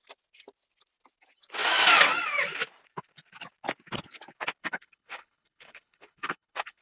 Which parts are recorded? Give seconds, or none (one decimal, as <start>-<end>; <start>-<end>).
0.0-4.6